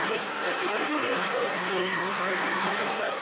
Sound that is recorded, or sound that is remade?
remade